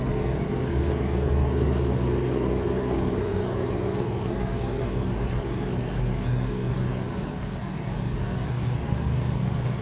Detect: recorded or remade remade